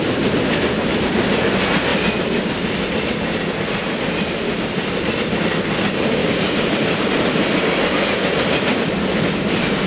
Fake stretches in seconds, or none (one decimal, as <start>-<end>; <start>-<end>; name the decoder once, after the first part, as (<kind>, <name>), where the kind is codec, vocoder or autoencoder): 6.2-7.1 (vocoder, BigVGAN v2)